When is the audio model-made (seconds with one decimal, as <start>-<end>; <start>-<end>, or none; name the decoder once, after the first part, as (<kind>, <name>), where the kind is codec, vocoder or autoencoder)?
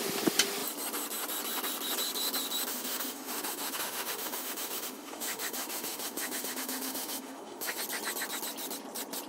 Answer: 2.7-7.8 (autoencoder, DAC-VAE)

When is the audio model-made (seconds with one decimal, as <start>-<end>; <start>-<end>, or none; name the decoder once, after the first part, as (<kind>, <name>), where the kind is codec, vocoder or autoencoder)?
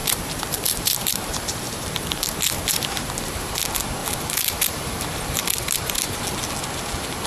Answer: 0.0-3.5 (vocoder, BigVGAN v2); 4.0-5.4